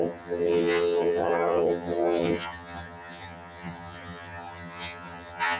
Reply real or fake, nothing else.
fake